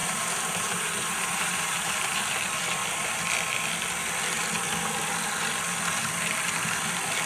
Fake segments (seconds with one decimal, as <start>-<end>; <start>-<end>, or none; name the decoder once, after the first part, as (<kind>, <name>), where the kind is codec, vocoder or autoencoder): 0.0-2.2 (vocoder, BigVGAN v2)